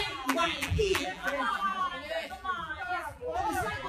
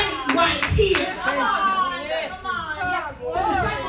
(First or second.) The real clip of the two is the second